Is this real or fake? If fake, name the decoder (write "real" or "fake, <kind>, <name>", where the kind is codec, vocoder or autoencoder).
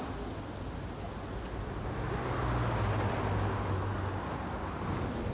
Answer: real